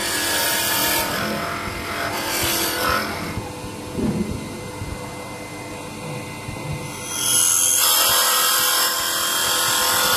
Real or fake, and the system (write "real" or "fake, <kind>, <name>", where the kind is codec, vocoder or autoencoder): real